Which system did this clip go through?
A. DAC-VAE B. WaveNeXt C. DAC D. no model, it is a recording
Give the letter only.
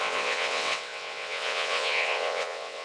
B